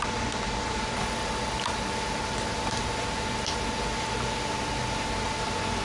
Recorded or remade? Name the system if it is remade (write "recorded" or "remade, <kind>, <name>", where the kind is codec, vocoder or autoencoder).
recorded